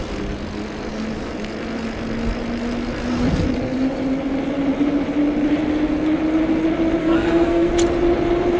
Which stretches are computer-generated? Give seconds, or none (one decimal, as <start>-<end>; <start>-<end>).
7.0-7.7